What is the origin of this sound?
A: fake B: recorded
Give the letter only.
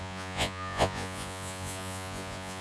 A